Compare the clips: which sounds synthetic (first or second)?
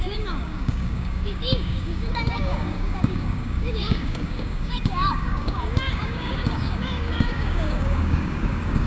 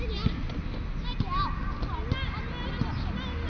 first